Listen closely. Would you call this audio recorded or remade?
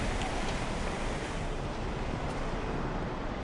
recorded